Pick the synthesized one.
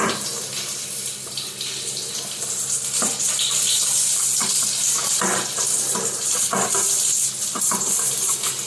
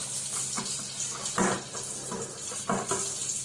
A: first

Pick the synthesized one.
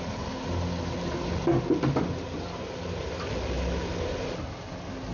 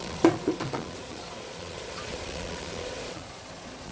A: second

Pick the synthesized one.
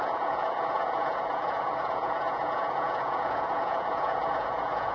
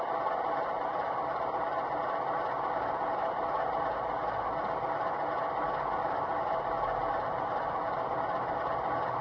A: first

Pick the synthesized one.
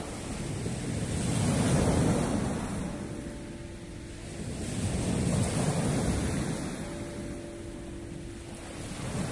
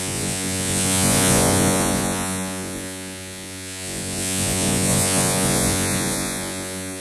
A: second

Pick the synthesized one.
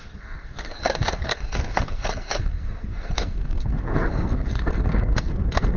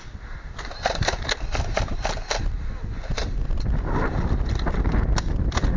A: first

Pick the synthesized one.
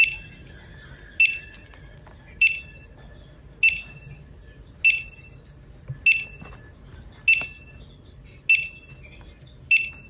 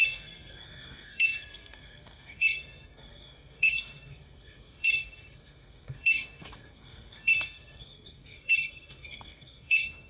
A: second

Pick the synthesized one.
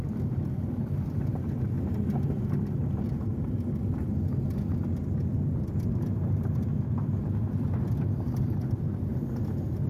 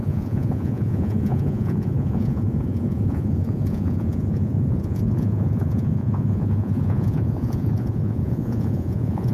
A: second